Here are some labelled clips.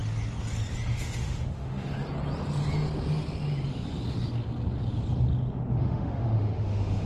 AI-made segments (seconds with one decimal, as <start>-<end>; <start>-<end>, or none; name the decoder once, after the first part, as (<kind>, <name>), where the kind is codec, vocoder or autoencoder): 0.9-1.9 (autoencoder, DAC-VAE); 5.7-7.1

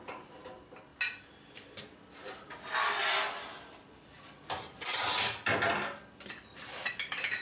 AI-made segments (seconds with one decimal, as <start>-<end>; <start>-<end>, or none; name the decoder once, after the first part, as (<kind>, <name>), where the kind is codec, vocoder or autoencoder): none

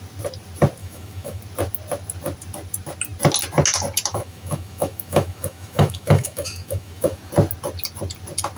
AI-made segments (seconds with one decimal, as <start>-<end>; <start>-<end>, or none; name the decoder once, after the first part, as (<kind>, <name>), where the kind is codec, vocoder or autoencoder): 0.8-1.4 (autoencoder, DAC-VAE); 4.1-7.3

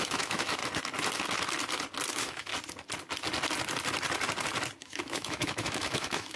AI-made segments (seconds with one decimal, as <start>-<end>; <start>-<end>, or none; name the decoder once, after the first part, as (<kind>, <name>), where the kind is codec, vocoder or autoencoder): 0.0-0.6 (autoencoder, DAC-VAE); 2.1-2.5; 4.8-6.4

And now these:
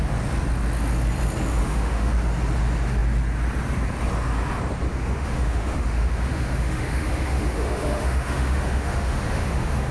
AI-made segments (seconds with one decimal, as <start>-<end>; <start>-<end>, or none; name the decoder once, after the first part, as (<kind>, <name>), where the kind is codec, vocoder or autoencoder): 1.6-2.1 (autoencoder, DAC-VAE); 4.9-9.9

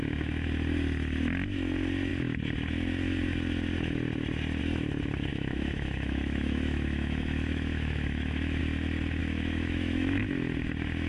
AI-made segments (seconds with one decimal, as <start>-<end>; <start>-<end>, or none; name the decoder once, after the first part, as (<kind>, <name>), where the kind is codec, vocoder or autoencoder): 5.3-8.6 (autoencoder, DAC-VAE); 9.2-10.2

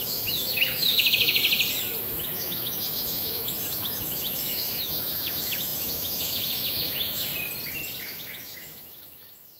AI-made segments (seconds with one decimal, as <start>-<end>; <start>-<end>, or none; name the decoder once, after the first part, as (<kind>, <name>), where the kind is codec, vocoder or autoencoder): 0.0-1.4 (autoencoder, DAC-VAE); 2.0-7.3; 8.0-9.6

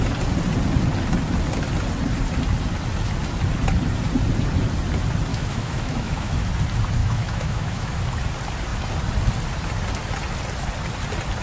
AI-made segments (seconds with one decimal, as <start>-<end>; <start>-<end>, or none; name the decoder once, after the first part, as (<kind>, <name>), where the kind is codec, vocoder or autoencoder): 5.3-6.5 (autoencoder, DAC-VAE); 7.0-8.0